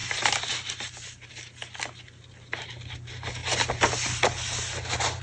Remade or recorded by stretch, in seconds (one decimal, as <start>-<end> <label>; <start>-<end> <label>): 0.0-5.2 recorded